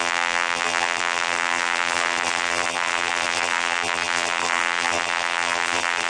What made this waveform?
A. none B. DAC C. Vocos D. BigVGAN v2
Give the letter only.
D